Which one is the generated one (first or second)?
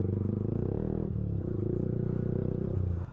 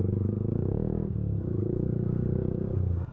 second